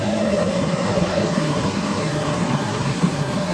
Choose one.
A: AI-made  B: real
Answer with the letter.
A